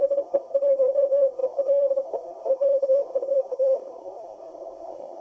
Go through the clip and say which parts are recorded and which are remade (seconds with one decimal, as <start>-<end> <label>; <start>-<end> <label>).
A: 0.0-5.2 remade